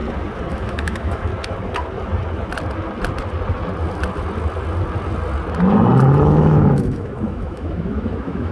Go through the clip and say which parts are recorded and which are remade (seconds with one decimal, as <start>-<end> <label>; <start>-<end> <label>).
0.0-0.5 recorded; 0.5-1.3 remade; 1.3-6.2 recorded; 6.2-8.5 remade